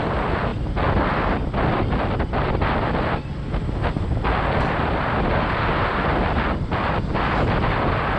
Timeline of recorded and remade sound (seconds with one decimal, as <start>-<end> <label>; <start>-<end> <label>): 0.0-8.2 recorded